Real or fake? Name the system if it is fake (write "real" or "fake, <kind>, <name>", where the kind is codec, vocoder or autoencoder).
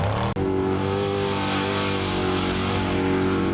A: real